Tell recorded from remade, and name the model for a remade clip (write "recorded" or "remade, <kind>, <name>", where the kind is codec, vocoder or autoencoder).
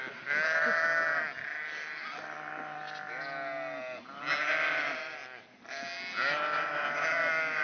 recorded